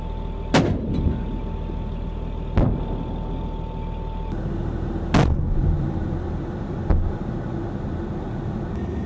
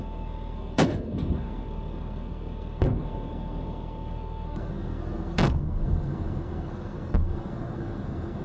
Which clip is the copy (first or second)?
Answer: second